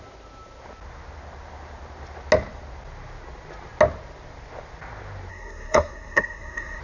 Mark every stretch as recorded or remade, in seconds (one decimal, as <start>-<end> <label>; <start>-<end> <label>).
0.0-5.3 recorded; 5.3-6.8 remade